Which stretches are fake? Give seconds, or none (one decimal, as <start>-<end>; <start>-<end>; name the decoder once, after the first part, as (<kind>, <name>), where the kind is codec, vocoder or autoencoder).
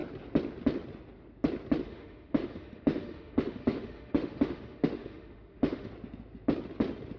1.8-5.9 (autoencoder, DAC-VAE)